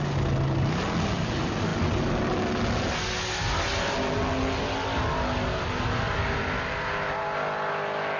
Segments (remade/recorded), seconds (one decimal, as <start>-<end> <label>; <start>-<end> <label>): 0.0-8.2 recorded